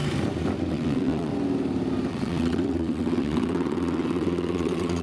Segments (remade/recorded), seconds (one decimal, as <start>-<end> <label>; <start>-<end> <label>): 0.0-0.7 recorded; 0.7-1.3 remade; 1.3-2.1 recorded; 2.1-5.0 remade